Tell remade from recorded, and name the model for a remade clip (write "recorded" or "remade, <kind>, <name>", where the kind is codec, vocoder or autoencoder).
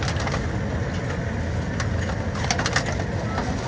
recorded